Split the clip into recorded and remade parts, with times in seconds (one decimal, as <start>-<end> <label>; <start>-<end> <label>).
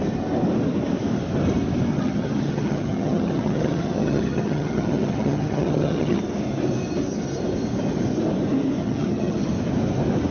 0.0-1.9 recorded; 1.9-6.2 remade; 6.2-8.8 recorded; 8.8-9.5 remade; 9.5-10.3 recorded